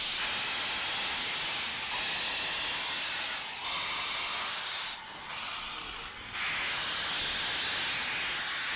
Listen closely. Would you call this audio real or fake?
real